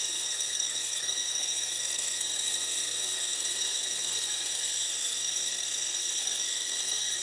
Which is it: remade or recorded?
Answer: remade